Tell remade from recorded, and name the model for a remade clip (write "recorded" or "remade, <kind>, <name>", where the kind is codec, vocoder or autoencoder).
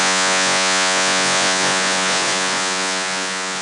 remade, vocoder, Vocos